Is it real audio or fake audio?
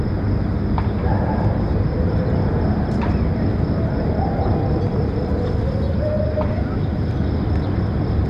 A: real